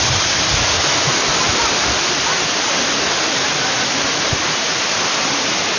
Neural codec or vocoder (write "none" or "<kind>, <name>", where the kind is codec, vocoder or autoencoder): none